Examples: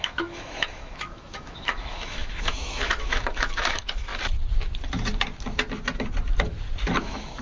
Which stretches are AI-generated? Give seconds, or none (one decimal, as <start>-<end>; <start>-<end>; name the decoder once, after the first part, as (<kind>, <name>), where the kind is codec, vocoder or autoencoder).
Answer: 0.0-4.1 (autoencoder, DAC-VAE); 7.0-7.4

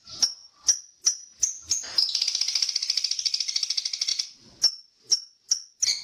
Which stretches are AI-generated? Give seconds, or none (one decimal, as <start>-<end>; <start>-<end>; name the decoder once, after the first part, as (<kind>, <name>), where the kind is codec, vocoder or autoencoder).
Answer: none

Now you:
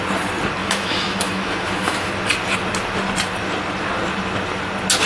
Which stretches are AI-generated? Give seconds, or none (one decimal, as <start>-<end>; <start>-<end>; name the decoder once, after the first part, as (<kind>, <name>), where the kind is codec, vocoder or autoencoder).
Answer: 0.6-2.1 (autoencoder, DAC-VAE)

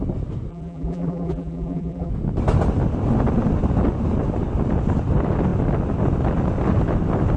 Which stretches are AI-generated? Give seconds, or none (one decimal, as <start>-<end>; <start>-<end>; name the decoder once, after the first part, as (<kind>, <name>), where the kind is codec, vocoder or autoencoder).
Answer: 0.5-2.1 (vocoder, BigVGAN v2)

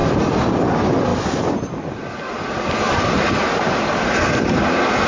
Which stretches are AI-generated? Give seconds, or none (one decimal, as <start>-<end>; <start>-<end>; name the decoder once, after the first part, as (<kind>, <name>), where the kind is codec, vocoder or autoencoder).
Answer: 0.0-0.7 (vocoder, BigVGAN v2); 1.1-4.0

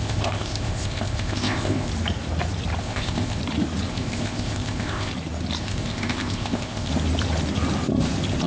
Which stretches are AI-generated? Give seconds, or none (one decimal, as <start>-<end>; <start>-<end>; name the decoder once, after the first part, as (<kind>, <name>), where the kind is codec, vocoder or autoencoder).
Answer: 0.0-1.9 (codec, ZipCodec); 2.8-3.4; 3.9-5.1; 5.6-6.9

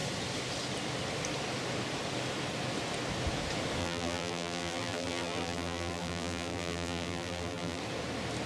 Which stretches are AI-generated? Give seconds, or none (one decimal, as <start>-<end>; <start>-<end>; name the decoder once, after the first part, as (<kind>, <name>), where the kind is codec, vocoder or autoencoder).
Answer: 3.8-7.8 (vocoder, BigVGAN v2)

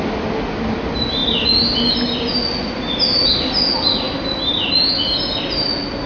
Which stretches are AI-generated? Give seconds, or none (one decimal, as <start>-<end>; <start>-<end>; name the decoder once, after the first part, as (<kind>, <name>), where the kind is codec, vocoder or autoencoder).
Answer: none